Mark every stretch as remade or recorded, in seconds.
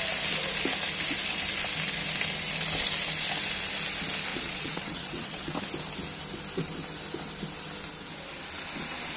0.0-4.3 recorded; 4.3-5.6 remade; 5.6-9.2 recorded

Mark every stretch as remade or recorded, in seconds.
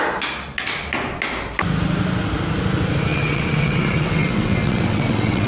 0.0-3.1 recorded; 3.1-5.5 remade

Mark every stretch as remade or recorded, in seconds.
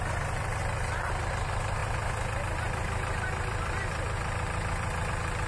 0.0-5.5 recorded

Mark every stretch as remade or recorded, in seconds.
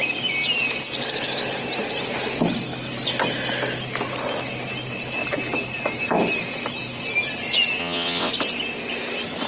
0.0-7.8 recorded; 7.8-8.3 remade; 8.3-9.5 recorded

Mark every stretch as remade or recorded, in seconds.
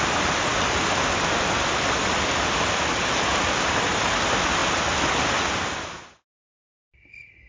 0.0-7.5 recorded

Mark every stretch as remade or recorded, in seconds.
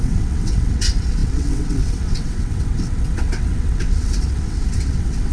0.0-5.3 remade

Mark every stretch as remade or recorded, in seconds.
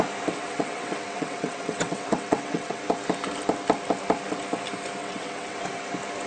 0.0-0.4 recorded; 0.4-2.8 remade; 2.8-5.0 recorded; 5.0-5.6 remade; 5.6-6.3 recorded